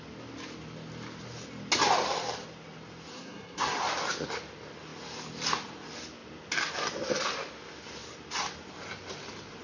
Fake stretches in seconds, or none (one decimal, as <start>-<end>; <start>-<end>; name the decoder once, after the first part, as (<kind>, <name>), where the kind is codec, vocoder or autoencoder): 3.1-3.8 (codec, SNAC)